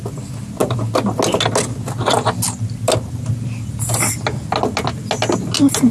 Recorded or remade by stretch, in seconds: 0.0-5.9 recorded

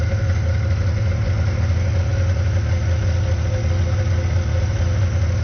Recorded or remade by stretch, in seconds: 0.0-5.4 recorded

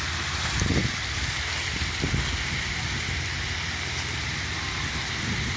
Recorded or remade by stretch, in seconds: 0.0-5.6 recorded

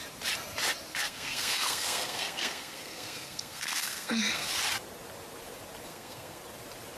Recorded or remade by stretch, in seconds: 0.0-0.9 recorded; 0.9-4.5 remade; 4.5-5.9 recorded; 5.9-6.4 remade; 6.4-7.0 recorded

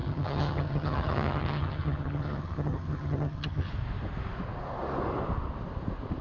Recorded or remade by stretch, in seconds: 0.0-3.7 remade; 3.7-6.2 recorded

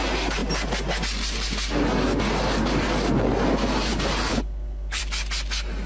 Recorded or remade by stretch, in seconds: 0.0-4.3 recorded; 4.3-5.0 remade; 5.0-5.9 recorded